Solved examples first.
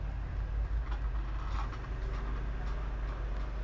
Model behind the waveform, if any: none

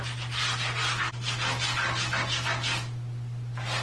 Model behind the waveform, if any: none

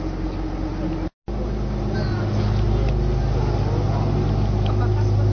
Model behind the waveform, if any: none